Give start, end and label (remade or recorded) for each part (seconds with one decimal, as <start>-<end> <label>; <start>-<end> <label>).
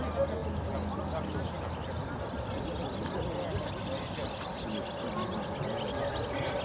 0.0-6.6 recorded